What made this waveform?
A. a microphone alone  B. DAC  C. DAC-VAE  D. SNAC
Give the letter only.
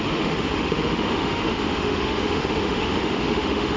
C